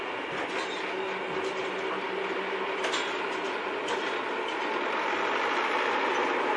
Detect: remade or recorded recorded